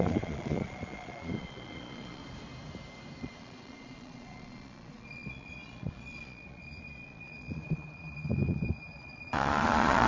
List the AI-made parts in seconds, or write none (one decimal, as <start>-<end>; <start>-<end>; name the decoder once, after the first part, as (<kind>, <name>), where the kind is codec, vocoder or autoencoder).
0.0-2.2 (vocoder, Vocos); 3.2-10.1